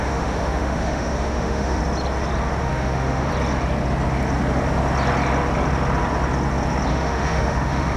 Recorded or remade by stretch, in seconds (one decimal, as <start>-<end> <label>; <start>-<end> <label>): 0.0-1.8 remade; 1.8-2.6 recorded; 2.6-3.3 remade; 3.3-6.9 recorded; 6.9-8.0 remade